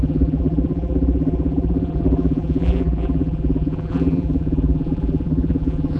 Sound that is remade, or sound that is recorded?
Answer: remade